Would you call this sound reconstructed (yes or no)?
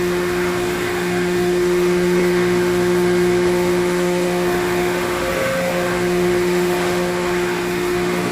yes